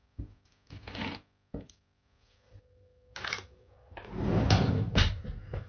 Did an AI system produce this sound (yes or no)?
no